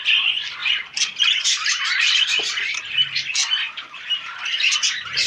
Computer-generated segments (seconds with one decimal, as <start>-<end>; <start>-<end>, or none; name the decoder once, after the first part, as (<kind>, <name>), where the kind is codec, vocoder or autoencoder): 0.0-5.3 (vocoder, BigVGAN v2)